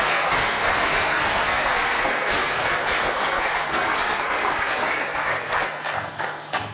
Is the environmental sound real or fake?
fake